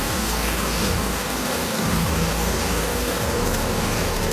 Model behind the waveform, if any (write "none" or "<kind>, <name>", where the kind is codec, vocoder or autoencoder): codec, DAC